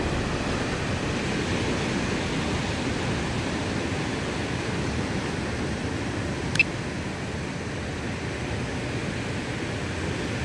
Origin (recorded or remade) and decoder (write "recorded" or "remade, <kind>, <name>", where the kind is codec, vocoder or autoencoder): recorded